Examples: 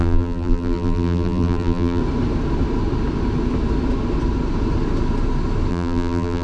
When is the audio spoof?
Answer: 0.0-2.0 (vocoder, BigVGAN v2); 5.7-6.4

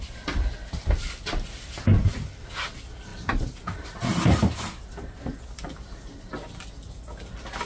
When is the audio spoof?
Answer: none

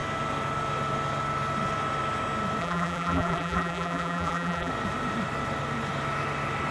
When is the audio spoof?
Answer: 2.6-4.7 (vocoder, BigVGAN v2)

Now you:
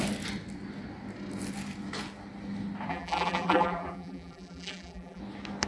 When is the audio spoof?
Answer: 2.9-5.2 (vocoder, BigVGAN v2)

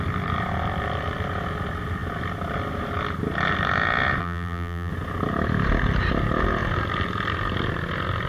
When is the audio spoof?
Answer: 4.2-4.9 (vocoder, BigVGAN v2)

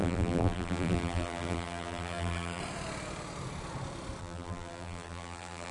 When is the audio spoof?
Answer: 0.0-2.6 (vocoder, BigVGAN v2); 4.2-5.7

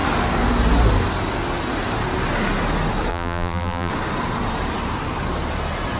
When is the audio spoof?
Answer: 3.1-3.9 (vocoder, BigVGAN v2)